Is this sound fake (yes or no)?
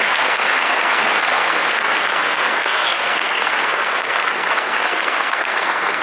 yes